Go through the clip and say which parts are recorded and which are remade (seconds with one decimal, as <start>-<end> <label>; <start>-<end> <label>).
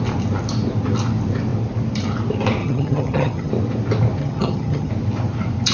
0.0-2.6 recorded; 2.6-3.5 remade; 3.5-4.2 recorded; 4.2-4.9 remade; 4.9-5.7 recorded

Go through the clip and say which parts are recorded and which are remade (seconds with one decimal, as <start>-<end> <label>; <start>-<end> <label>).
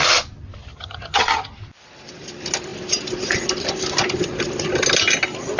0.0-0.6 recorded; 0.6-1.5 remade; 1.5-5.6 recorded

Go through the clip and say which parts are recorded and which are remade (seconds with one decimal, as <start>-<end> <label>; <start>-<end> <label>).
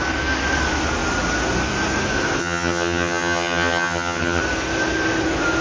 0.0-2.4 recorded; 2.4-4.4 remade; 4.4-5.6 recorded